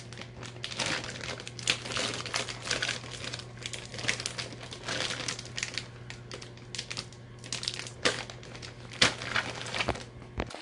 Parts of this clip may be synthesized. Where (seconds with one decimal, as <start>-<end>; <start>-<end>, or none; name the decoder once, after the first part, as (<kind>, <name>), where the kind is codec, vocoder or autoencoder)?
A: none